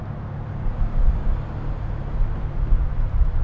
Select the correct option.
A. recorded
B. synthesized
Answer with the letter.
A